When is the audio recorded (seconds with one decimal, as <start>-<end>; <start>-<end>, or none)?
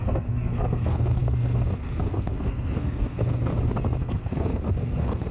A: 3.5-4.0